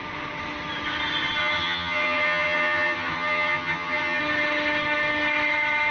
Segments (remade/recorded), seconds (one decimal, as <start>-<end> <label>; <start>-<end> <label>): 0.0-1.4 recorded; 1.4-4.2 remade; 4.2-5.9 recorded